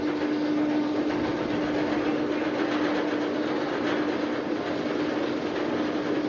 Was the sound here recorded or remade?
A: recorded